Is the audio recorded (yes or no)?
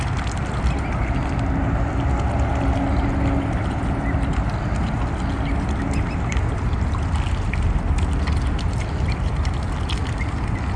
yes